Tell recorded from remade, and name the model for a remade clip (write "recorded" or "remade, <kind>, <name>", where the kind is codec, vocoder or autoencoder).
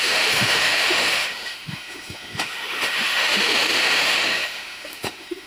remade, autoencoder, DAC-VAE